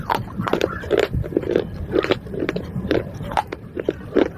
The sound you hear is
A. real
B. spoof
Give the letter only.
B